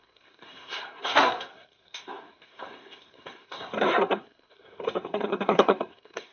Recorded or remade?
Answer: remade